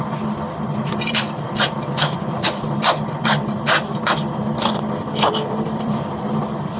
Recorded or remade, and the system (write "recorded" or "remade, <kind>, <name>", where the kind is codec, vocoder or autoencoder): remade, vocoder, BigVGAN v2